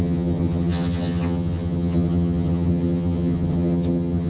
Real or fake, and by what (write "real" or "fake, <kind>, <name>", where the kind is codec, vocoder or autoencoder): fake, vocoder, HiFi-GAN